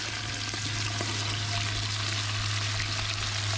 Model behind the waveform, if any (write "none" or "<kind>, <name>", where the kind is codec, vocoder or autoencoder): none